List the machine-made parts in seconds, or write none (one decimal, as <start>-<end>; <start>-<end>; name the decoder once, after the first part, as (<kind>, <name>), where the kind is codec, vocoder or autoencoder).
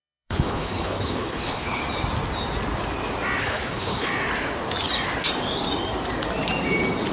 0.0-1.8 (codec, HILCodec); 3.4-4.1